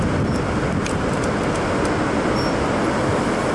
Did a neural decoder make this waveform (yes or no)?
no